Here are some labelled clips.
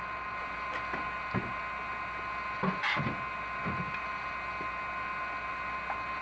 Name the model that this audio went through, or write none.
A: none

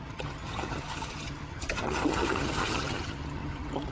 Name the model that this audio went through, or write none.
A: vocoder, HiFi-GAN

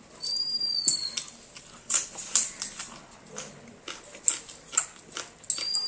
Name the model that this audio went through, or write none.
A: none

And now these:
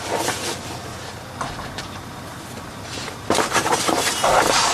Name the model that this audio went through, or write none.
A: vocoder, BigVGAN v2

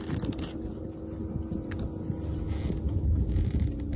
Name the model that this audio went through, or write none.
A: none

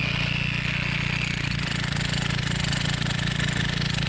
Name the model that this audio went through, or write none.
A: none